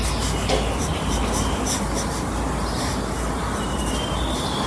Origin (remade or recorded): recorded